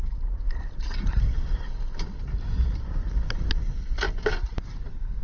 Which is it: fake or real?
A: real